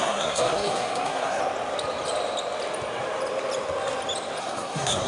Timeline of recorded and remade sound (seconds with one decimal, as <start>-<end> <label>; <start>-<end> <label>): 0.0-1.4 remade; 1.4-4.4 recorded; 4.4-5.1 remade